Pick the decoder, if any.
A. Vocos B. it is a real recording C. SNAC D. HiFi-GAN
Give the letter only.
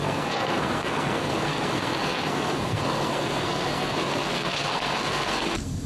C